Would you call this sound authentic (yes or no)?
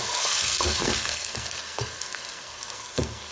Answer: no